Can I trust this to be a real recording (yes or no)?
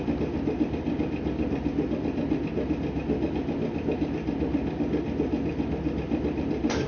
yes